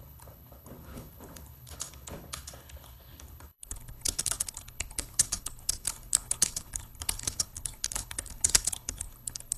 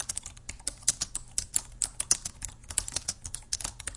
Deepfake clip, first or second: first